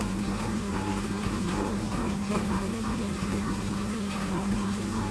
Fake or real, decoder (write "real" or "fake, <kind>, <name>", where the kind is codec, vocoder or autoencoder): fake, codec, SNAC